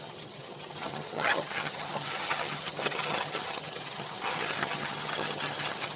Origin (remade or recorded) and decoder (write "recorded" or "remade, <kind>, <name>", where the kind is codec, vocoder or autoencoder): remade, vocoder, HiFi-GAN